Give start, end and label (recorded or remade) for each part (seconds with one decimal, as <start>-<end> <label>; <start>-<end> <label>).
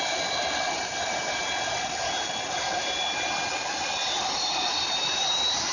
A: 0.0-1.4 remade; 1.4-3.7 recorded; 3.7-5.7 remade